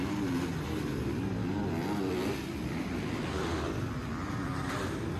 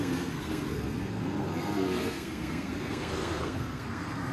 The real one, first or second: first